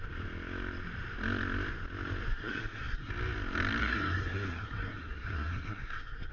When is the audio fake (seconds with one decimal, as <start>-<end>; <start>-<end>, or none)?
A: 2.3-3.1; 3.8-6.3